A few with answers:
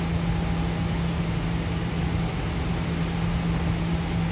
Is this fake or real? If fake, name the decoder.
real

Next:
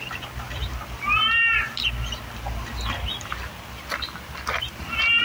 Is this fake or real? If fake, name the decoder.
real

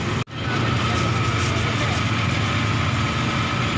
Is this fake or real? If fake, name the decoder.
real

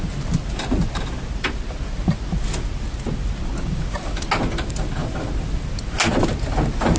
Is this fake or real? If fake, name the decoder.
real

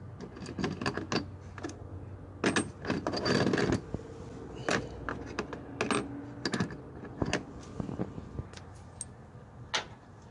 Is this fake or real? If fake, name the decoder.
real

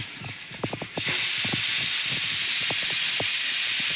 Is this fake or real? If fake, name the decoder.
real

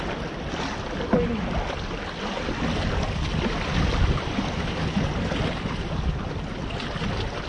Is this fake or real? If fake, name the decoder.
real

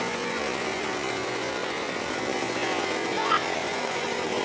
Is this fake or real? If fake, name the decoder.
fake, vocoder, Vocos